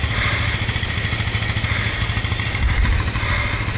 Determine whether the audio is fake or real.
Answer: real